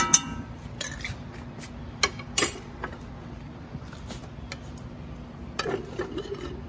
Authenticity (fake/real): real